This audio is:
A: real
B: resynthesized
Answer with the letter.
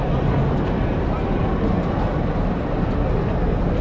A